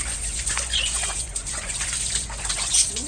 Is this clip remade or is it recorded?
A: remade